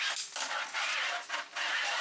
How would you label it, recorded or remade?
recorded